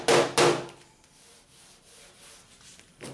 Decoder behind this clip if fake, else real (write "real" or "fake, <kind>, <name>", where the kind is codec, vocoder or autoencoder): real